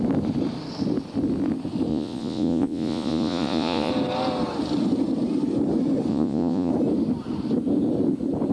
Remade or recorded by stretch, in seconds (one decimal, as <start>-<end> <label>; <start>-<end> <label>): 0.0-1.9 recorded; 1.9-3.9 remade; 3.9-6.1 recorded; 6.1-6.7 remade; 6.7-8.5 recorded